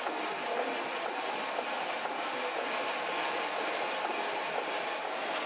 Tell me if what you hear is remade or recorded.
recorded